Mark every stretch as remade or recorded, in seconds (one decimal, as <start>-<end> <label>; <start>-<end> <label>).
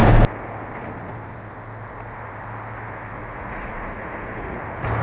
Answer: 0.0-3.2 recorded; 3.2-4.6 remade; 4.6-5.0 recorded